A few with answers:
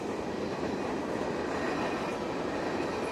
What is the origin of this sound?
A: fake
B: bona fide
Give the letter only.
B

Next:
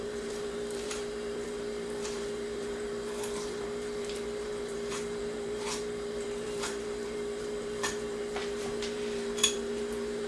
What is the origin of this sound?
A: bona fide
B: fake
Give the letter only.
B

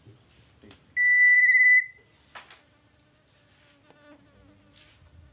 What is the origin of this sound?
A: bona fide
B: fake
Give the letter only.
A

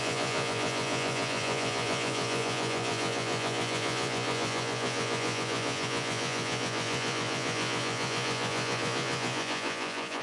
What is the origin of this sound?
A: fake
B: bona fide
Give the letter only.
A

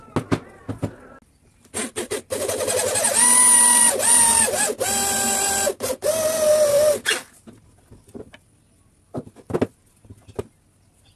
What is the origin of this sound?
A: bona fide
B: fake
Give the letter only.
A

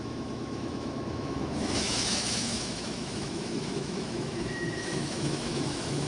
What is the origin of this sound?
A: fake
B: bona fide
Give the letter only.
A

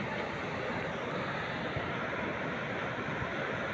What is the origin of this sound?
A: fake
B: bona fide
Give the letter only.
B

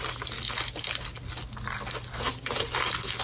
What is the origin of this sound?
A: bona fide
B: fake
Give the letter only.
A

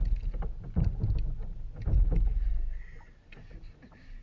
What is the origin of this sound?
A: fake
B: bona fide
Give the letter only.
B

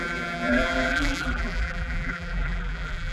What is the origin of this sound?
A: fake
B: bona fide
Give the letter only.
A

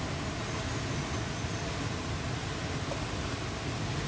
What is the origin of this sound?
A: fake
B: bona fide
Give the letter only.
B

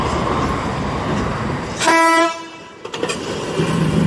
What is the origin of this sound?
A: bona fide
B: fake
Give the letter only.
A